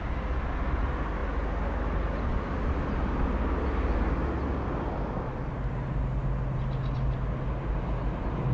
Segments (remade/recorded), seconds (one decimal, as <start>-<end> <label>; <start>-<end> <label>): 0.0-8.5 recorded